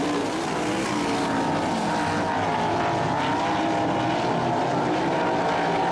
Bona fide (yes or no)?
yes